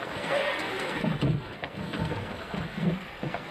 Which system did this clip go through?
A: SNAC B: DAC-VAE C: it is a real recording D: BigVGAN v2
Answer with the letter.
A